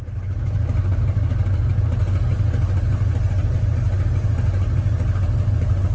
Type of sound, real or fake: real